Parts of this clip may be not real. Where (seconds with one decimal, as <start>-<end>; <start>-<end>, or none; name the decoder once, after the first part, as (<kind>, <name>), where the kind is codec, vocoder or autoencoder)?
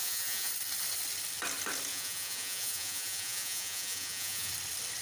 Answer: 0.0-0.5 (vocoder, Vocos); 1.9-4.5